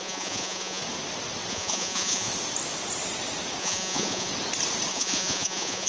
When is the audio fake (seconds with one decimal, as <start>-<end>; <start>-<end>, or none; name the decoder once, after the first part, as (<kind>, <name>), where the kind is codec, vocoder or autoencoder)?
0.0-0.8 (vocoder, Vocos); 1.5-2.3; 3.6-4.3; 4.9-5.9